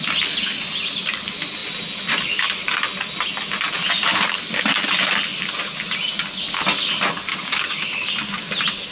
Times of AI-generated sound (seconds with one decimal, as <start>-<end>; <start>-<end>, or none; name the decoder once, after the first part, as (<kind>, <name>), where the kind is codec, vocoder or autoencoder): 7.3-8.1 (codec, DAC)